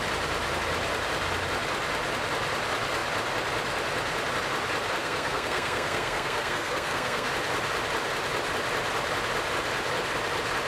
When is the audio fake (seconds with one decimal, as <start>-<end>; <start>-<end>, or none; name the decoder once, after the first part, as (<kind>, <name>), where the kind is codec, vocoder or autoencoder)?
5.0-7.3 (codec, SNAC)